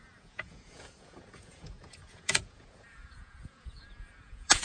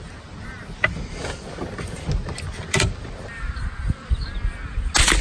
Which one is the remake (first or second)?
first